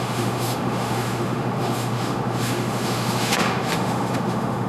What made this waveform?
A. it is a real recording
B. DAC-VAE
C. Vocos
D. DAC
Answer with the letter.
B